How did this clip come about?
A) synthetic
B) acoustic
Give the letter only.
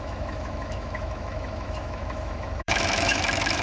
A